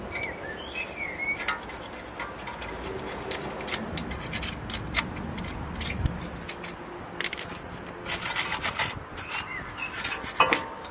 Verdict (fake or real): real